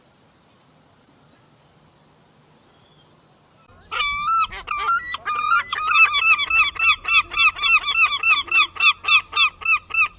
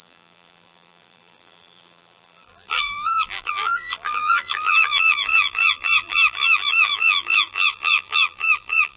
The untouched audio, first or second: first